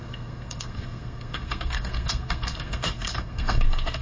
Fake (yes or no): yes